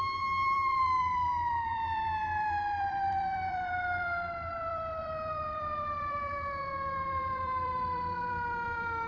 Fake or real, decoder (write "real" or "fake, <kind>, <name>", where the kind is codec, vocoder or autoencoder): fake, vocoder, BigVGAN v2